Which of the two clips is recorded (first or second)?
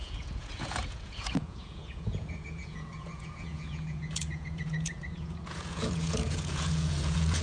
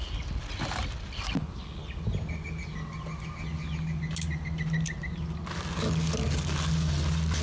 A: second